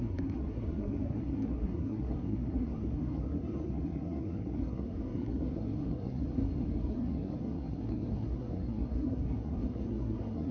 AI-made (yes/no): yes